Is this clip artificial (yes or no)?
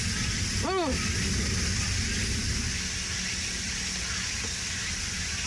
no